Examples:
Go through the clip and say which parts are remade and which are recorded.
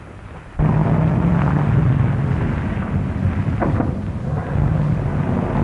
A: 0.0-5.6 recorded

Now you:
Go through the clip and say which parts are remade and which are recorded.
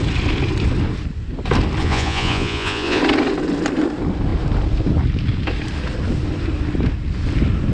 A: 0.0-1.8 recorded; 1.8-3.0 remade; 3.0-7.7 recorded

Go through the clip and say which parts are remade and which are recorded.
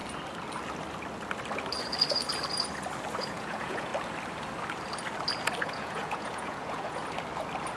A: 0.0-3.2 recorded; 3.2-3.9 remade; 3.9-5.6 recorded; 5.6-7.0 remade; 7.0-7.8 recorded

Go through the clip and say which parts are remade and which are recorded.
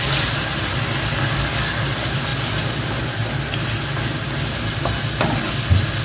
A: 0.0-6.0 recorded